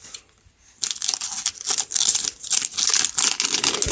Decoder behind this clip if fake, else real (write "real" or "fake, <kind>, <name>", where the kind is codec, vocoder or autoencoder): real